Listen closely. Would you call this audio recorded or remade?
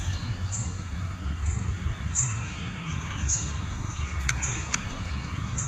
remade